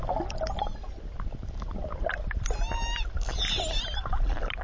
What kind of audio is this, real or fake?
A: real